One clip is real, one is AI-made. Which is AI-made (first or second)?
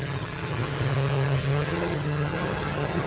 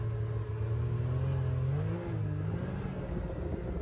first